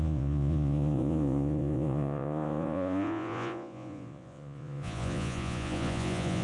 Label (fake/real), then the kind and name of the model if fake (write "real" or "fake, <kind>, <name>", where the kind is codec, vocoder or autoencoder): fake, vocoder, Vocos